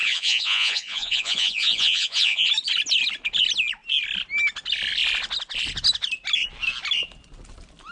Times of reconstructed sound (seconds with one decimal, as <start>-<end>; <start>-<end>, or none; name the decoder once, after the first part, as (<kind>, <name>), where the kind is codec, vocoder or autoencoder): 0.0-2.5 (vocoder, Vocos)